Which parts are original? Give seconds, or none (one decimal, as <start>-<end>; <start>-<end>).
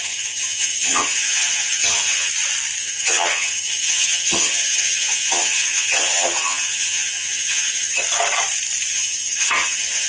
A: 2.3-2.8; 8.0-8.9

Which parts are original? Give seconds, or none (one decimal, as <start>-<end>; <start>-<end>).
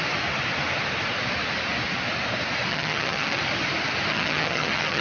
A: 0.0-2.7; 3.4-4.1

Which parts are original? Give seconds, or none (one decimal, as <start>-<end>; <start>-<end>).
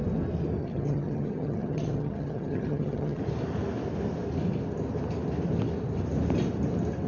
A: 0.0-0.6; 3.2-7.1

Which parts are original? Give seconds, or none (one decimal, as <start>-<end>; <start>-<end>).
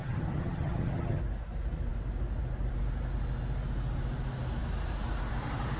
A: 1.2-5.8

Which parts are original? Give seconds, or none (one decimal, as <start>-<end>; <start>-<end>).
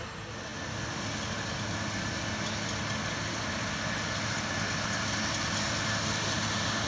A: 0.0-6.9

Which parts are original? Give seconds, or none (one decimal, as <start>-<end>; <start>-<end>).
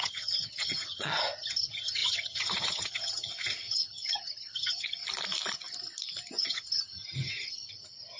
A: 5.0-6.4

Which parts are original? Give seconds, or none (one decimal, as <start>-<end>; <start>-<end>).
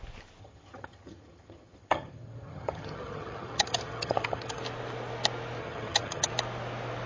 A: 0.0-0.4; 4.6-5.6; 6.3-7.1